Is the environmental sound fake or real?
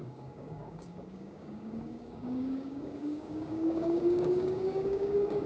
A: fake